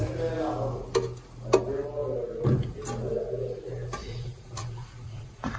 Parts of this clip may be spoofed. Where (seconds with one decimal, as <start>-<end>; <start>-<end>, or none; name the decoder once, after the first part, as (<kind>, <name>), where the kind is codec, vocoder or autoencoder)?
4.0-5.6 (vocoder, Vocos)